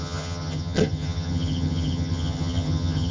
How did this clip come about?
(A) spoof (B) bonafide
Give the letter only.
A